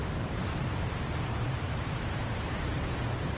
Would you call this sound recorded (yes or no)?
no